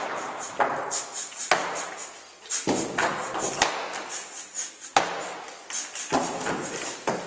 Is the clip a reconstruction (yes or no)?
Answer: no